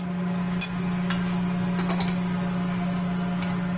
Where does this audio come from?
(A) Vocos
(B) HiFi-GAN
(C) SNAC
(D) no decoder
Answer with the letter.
D